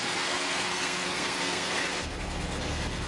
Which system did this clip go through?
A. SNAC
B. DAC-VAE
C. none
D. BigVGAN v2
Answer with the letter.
A